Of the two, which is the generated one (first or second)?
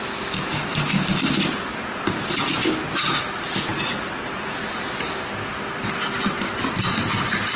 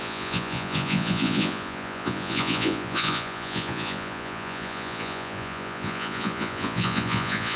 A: second